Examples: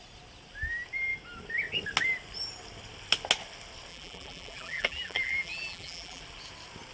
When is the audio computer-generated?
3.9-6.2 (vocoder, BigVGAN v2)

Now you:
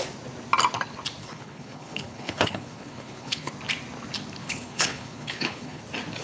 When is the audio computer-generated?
1.2-3.5 (codec, HILCodec); 4.4-5.8

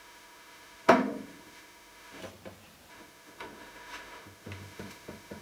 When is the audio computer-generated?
0.0-2.2 (autoencoder, DAC-VAE); 2.9-5.4

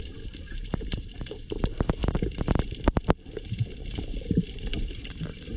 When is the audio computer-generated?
0.0-2.0 (vocoder, BigVGAN v2); 3.5-5.6

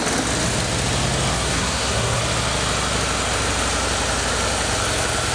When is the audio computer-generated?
1.3-2.2 (codec, SNAC)